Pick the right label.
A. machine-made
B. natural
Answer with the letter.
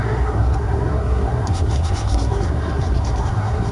A